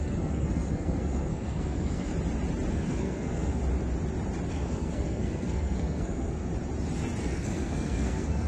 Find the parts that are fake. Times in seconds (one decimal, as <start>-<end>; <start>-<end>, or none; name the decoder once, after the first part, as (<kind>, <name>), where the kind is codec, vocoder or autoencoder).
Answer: 0.0-2.1 (codec, SNAC); 2.7-3.6; 4.5-6.5; 7.2-8.5

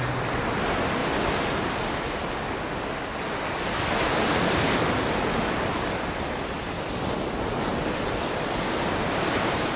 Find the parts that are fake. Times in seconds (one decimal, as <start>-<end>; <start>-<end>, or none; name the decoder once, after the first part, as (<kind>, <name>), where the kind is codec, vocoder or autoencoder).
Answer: 0.0-1.0 (vocoder, BigVGAN v2); 4.8-9.8

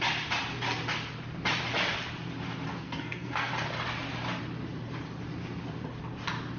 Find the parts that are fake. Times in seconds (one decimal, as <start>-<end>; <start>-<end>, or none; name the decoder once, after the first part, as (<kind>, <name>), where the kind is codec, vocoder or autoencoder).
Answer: 2.7-3.5 (codec, SNAC)

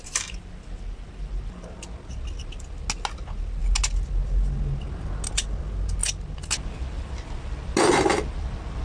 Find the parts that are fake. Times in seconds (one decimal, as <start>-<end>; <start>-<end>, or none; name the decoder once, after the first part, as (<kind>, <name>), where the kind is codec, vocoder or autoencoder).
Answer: none

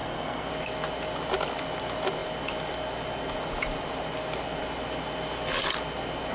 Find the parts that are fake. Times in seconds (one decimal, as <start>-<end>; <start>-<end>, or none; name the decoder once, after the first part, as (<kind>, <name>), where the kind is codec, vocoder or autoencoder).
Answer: 0.0-0.5 (codec, SNAC)

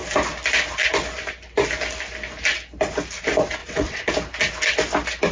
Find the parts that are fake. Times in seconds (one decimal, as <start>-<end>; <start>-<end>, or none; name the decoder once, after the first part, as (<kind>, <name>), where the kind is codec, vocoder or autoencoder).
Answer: 3.6-4.1 (vocoder, WaveNeXt)